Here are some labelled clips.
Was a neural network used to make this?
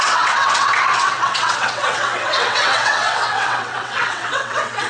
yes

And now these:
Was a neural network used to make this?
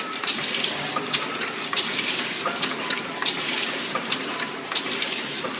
no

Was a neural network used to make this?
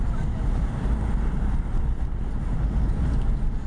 no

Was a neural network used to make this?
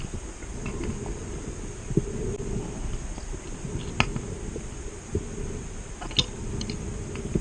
no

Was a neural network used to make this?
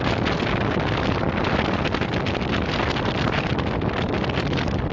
no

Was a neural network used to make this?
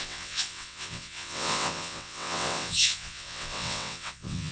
yes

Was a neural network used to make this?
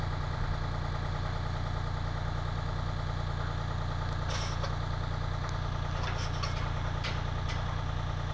no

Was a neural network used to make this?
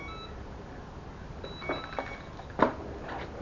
no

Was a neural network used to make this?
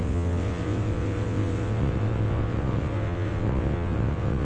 yes